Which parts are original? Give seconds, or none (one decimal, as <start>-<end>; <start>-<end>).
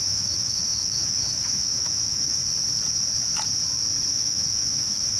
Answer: 2.4-4.1